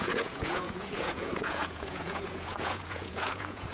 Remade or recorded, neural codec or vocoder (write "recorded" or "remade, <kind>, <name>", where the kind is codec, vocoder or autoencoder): remade, vocoder, Vocos